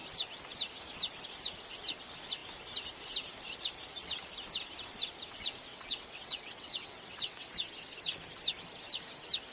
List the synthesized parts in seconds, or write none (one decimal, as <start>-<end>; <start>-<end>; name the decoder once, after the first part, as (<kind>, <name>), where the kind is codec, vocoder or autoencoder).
5.7-7.5 (vocoder, WaveNeXt)